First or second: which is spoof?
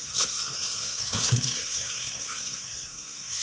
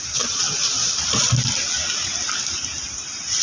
first